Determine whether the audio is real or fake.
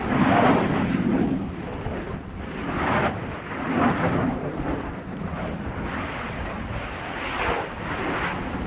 real